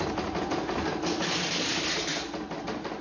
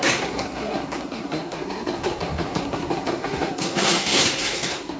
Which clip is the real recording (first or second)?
first